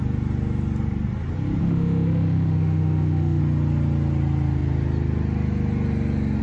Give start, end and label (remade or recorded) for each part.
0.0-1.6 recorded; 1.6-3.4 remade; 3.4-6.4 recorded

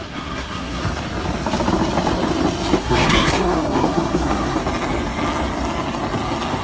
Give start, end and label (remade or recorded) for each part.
0.0-0.8 remade; 0.8-2.8 recorded; 2.8-4.6 remade; 4.6-6.6 recorded